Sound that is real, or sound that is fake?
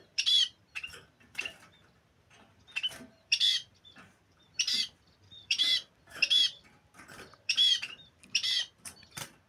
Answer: fake